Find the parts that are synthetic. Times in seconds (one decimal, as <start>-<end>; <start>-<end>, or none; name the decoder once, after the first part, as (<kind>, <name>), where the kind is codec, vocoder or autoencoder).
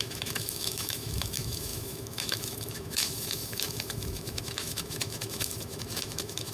0.0-6.5 (autoencoder, DAC-VAE)